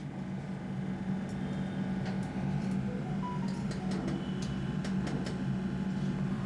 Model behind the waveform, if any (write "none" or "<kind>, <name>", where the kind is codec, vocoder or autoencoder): none